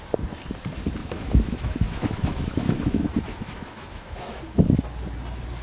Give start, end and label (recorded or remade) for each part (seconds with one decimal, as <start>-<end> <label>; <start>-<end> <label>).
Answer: 0.0-1.0 recorded; 1.0-4.4 remade; 4.4-5.6 recorded